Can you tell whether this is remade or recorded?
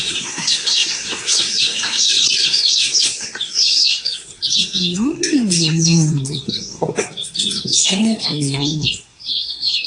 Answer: remade